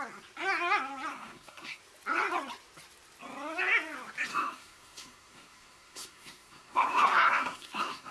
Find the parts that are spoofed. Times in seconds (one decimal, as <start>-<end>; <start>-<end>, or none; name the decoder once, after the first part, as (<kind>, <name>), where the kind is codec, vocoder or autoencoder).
1.1-1.8 (codec, SNAC); 4.3-8.1